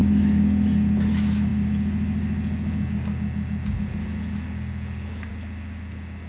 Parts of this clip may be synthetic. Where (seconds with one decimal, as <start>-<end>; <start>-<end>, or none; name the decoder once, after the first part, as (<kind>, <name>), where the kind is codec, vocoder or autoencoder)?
none